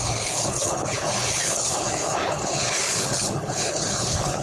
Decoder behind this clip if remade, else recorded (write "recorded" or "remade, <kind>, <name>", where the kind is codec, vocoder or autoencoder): remade, codec, HILCodec